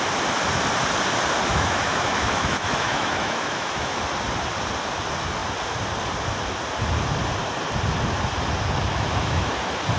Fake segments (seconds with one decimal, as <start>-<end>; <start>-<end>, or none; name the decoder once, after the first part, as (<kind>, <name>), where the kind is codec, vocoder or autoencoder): 1.5-4.0 (autoencoder, DAC-VAE); 8.9-9.5